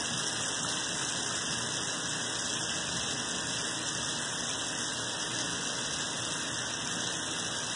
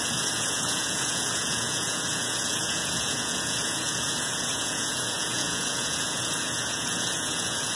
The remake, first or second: second